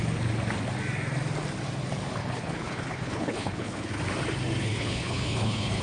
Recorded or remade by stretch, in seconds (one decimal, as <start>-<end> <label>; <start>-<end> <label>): 0.0-2.2 recorded; 2.2-4.0 remade; 4.0-4.6 recorded; 4.6-5.8 remade